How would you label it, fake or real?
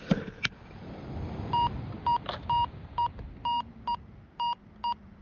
real